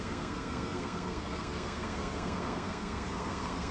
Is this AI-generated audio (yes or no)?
yes